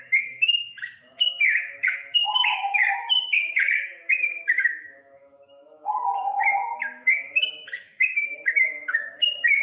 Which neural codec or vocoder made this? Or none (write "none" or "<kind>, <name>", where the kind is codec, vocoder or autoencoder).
autoencoder, DAC-VAE